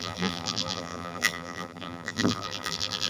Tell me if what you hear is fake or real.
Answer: fake